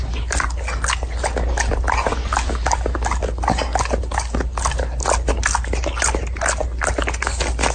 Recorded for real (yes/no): yes